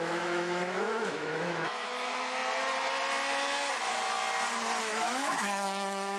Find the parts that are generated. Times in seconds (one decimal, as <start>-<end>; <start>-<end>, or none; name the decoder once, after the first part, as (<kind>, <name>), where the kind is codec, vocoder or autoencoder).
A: 0.0-2.4 (autoencoder, DAC-VAE); 4.8-6.2